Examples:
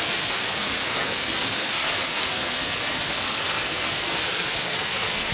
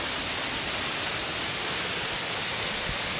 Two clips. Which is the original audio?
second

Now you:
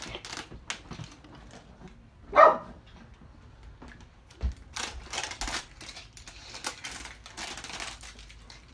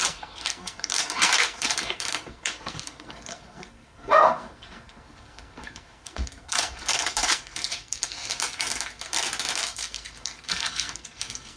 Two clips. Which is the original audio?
first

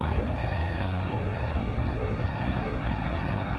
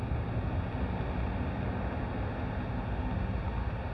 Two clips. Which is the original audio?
second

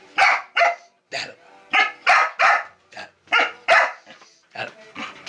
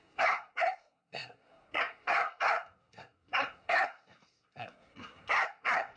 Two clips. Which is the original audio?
first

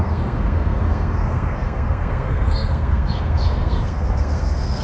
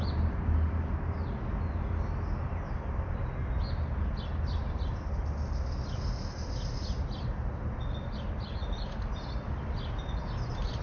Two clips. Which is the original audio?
second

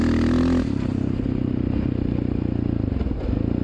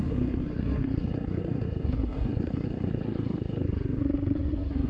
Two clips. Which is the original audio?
first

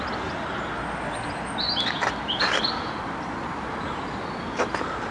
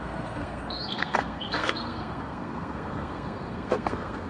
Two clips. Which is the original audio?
first